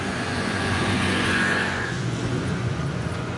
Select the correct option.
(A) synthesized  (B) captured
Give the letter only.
A